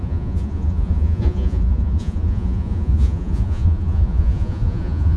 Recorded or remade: remade